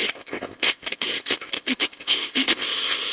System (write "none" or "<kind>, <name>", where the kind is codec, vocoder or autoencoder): codec, ZipCodec